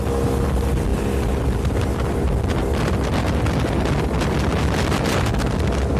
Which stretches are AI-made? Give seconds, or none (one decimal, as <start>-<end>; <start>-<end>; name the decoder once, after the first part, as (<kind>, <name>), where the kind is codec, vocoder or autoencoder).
none